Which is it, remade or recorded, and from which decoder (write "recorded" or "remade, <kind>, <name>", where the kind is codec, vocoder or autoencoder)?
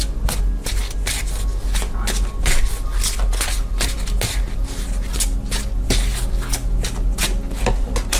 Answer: recorded